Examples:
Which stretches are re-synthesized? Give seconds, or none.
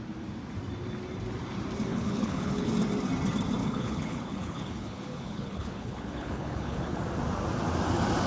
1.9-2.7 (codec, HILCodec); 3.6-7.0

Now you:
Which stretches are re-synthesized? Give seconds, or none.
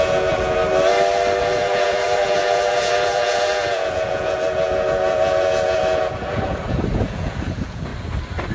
0.0-0.6 (vocoder, Vocos); 1.4-7.9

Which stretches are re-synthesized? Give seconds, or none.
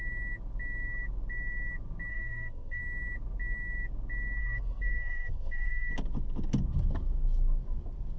2.1-2.8 (codec, SNAC); 4.4-5.9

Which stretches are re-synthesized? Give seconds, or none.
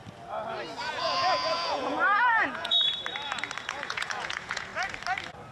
1.0-2.8 (vocoder, Vocos); 3.7-4.7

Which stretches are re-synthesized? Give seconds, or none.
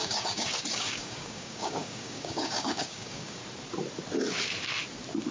0.0-3.4 (codec, DAC)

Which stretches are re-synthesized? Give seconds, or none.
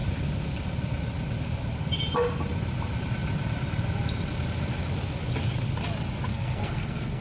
6.3-7.2 (codec, SNAC)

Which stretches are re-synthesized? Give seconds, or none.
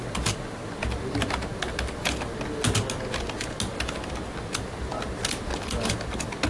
none